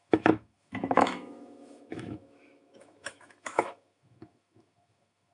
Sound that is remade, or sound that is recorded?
remade